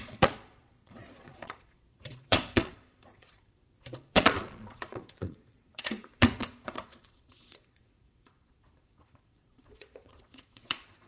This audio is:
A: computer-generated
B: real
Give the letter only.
A